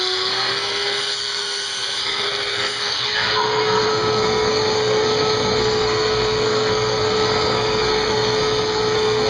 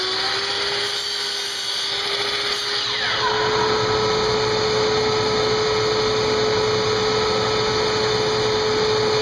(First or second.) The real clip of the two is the second